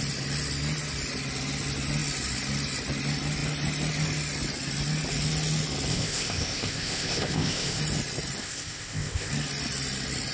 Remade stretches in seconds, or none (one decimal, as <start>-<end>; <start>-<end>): 5.9-7.8; 8.4-9.3